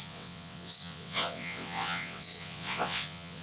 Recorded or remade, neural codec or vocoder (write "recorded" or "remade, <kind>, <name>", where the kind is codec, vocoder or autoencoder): remade, vocoder, WaveNeXt